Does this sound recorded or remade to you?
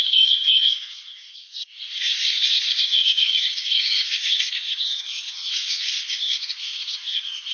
remade